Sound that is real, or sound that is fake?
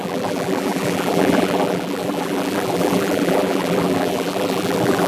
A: fake